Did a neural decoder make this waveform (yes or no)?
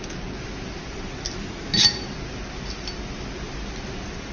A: no